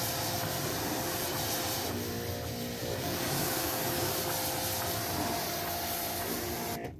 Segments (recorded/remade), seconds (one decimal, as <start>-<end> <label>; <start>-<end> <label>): 0.0-2.8 recorded; 2.8-4.1 remade; 4.1-7.0 recorded